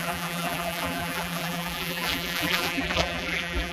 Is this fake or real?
fake